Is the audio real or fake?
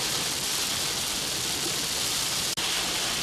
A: real